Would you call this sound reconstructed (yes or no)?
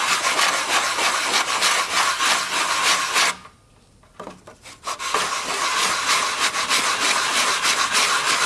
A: no